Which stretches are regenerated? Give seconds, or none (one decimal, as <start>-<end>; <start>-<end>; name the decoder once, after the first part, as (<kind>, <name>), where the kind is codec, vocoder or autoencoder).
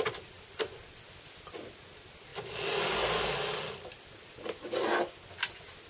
none